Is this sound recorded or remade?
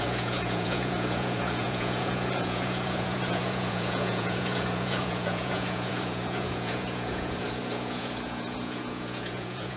remade